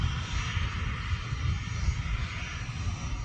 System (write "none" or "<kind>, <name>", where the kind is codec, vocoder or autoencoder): none